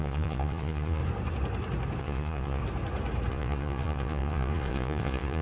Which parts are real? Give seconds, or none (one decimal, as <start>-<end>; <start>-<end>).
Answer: 1.0-2.0; 2.6-3.3